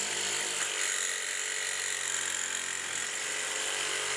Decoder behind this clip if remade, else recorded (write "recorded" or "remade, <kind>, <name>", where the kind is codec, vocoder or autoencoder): recorded